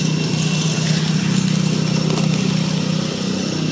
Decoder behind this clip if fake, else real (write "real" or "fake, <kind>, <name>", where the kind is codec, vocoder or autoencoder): real